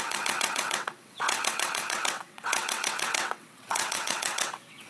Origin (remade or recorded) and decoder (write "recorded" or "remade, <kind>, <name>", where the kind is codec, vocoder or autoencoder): remade, vocoder, WaveNeXt